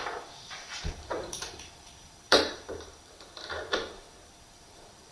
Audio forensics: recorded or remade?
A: remade